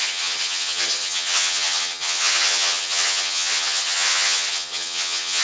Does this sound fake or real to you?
fake